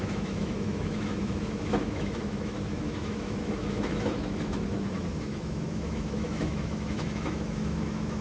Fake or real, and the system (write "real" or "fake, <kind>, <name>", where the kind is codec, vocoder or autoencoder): fake, autoencoder, DAC-VAE